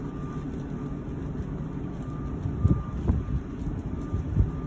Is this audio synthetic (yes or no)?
no